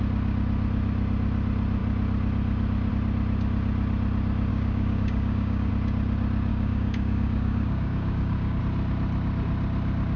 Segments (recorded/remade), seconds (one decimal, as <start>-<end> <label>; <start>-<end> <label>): 0.0-4.5 recorded; 4.5-5.7 remade; 5.7-6.5 recorded; 6.5-8.6 remade; 8.6-10.2 recorded